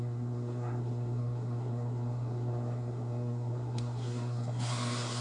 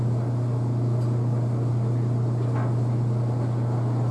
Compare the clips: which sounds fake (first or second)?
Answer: first